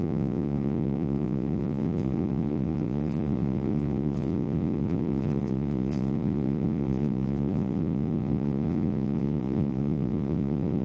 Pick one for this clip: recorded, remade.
remade